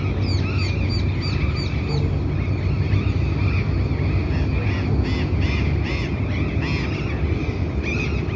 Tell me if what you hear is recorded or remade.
recorded